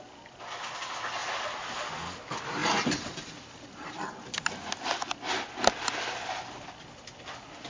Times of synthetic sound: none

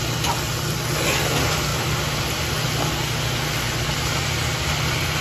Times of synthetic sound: none

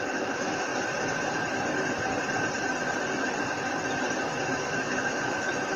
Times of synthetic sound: 0.0-0.7 (autoencoder, DAC-VAE); 4.2-5.8

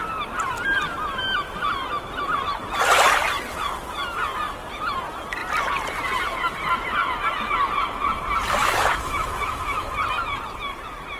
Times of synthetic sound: 8.6-9.9 (autoencoder, DAC-VAE)

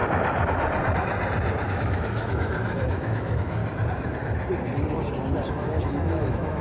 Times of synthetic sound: 1.6-3.6 (autoencoder, DAC-VAE); 5.5-6.6